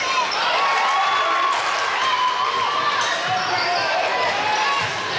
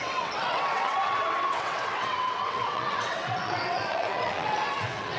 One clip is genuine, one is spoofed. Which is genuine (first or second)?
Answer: first